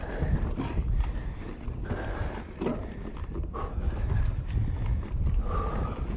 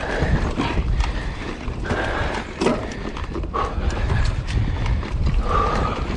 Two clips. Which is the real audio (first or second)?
first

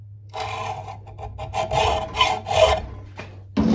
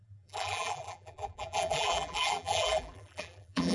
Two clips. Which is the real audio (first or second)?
first